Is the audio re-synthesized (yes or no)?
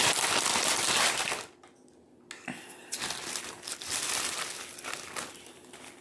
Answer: no